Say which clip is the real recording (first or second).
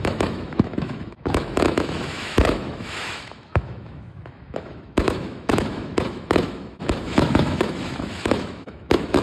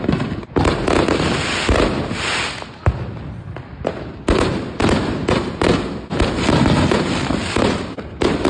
second